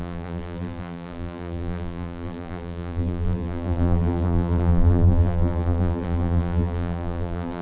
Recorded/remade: remade